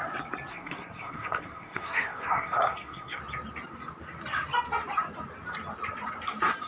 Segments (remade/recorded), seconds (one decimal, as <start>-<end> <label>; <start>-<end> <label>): 0.0-0.5 recorded; 0.5-3.2 remade; 3.2-6.7 recorded